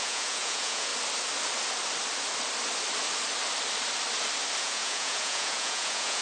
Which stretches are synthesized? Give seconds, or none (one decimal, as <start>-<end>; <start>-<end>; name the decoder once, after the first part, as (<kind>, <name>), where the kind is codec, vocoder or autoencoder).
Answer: 0.0-0.9 (vocoder, Vocos); 4.6-6.2